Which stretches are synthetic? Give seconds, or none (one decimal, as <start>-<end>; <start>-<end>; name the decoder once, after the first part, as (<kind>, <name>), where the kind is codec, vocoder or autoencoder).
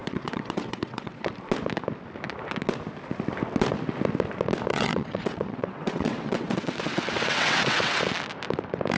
0.0-1.3 (vocoder, WaveNeXt); 4.7-8.0